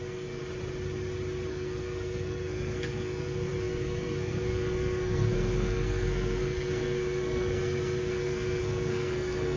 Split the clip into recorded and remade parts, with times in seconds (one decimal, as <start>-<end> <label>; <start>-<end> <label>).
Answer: 0.0-0.4 remade; 0.4-1.5 recorded; 1.5-9.6 remade